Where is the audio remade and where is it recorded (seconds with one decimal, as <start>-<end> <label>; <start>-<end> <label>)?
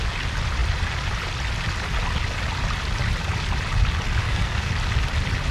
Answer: 0.0-4.2 recorded; 4.2-4.7 remade; 4.7-5.5 recorded